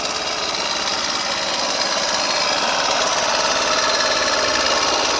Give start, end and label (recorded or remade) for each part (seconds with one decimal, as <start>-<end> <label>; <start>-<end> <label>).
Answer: 0.0-5.2 recorded

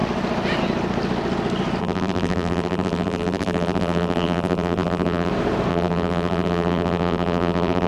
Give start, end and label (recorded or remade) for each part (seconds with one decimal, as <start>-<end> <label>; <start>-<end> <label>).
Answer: 0.0-1.8 recorded; 1.8-5.3 remade; 5.3-5.7 recorded; 5.7-7.9 remade

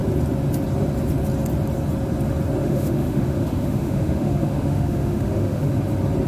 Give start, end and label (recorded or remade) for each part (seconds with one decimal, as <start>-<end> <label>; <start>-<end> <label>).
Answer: 0.0-2.6 recorded; 2.6-5.7 remade; 5.7-6.3 recorded

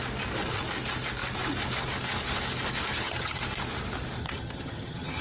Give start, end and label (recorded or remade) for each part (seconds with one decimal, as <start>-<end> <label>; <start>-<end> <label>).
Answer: 0.0-2.9 recorded; 2.9-3.4 remade; 3.4-4.2 recorded; 4.2-5.2 remade